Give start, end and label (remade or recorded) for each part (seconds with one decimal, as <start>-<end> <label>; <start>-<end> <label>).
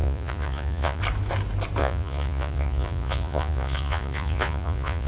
0.0-1.0 remade; 1.0-1.8 recorded; 1.8-5.1 remade